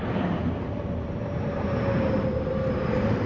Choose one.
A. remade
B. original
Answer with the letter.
B